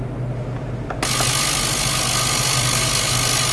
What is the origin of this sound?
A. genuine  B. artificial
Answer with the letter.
A